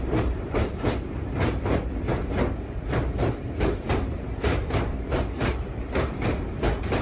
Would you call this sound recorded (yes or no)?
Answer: no